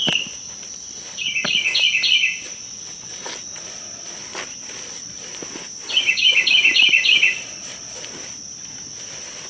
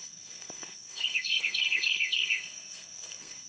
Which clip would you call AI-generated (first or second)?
second